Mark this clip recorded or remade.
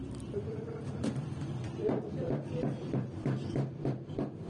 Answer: remade